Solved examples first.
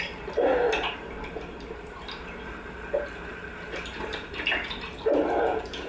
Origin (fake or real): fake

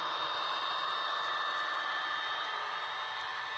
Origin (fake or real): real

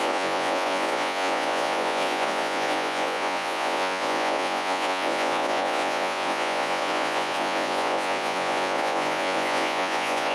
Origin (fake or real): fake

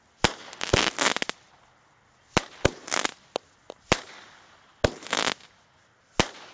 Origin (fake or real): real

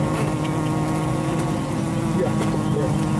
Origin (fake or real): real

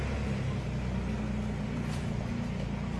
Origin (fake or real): real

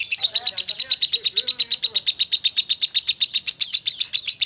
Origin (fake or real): real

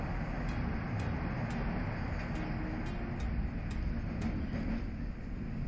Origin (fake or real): real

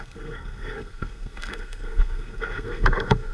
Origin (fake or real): fake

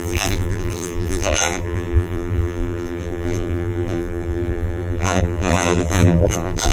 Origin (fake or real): fake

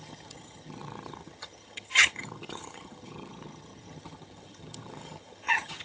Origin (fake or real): fake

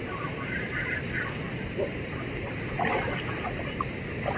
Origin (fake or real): real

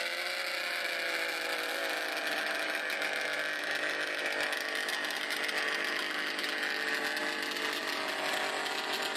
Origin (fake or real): real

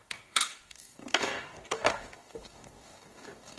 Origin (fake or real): fake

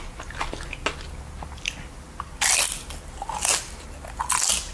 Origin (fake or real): real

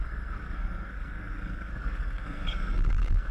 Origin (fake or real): fake